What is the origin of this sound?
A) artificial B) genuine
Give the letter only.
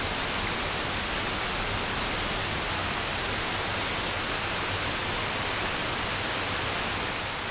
B